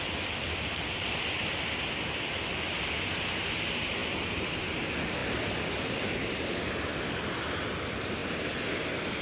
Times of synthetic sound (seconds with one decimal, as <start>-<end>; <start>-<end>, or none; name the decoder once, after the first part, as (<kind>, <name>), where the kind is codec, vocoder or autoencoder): none